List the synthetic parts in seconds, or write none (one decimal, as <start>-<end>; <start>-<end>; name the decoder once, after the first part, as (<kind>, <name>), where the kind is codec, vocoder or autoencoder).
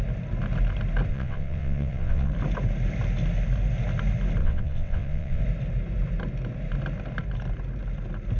1.1-2.3 (vocoder, WaveNeXt); 4.4-5.4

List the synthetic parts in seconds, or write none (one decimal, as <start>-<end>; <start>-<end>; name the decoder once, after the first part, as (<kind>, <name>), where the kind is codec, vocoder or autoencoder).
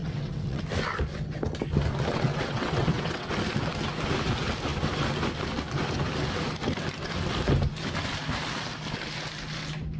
0.0-0.6 (vocoder, WaveNeXt); 2.1-3.3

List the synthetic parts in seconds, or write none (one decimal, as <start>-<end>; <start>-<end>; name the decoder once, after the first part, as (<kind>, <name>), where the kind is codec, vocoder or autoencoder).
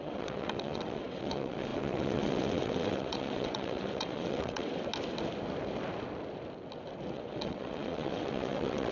0.0-4.9 (vocoder, WaveNeXt); 7.1-8.9